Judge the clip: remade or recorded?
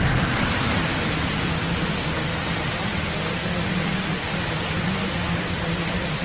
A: recorded